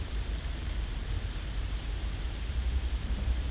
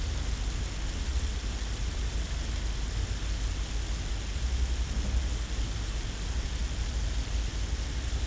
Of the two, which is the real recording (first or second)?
second